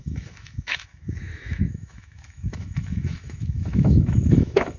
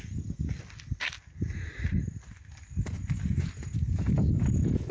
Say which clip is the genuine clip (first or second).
second